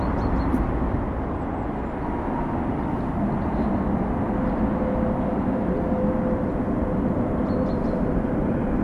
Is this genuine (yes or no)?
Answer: yes